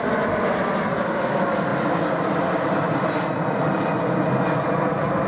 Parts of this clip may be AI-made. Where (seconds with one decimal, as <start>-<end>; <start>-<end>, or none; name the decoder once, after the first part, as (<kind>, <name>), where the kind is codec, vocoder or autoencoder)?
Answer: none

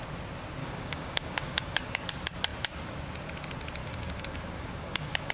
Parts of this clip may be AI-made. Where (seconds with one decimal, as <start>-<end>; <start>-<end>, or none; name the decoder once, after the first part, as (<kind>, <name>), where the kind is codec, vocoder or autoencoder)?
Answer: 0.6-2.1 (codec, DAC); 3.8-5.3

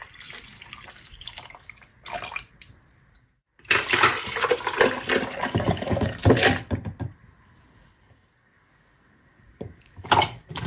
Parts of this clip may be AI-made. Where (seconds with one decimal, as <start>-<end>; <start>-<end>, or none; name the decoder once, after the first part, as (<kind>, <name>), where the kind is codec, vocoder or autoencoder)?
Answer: 0.9-1.9 (codec, DAC); 3.1-3.5; 5.3-6.2; 7.6-10.7

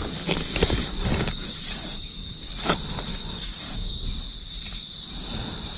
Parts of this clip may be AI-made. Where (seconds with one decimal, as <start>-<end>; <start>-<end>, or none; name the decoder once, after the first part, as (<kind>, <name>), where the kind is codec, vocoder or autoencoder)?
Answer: 1.1-2.5 (codec, DAC); 3.1-4.0